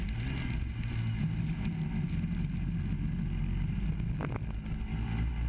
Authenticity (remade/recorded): recorded